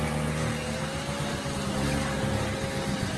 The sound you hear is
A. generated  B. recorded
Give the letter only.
B